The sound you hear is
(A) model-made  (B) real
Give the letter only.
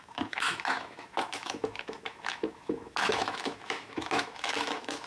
A